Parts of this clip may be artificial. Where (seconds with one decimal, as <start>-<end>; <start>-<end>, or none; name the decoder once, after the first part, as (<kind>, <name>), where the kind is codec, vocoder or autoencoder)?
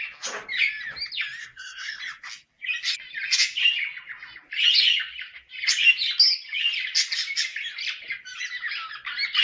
1.4-2.0 (codec, SNAC)